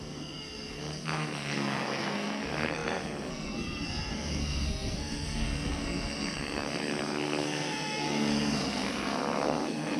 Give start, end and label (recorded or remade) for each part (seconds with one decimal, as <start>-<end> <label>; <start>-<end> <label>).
0.0-10.0 remade